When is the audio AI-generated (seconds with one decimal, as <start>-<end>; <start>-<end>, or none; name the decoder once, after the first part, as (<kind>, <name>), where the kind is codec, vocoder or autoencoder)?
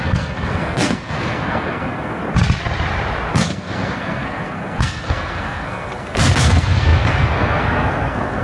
0.0-2.2 (codec, SNAC); 3.3-8.4